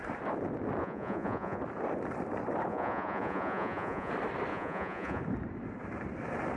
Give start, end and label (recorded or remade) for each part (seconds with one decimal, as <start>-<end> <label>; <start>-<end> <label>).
0.0-0.8 recorded; 0.8-1.6 remade; 1.6-2.7 recorded; 2.7-4.1 remade; 4.1-4.5 recorded; 4.5-5.2 remade; 5.2-6.6 recorded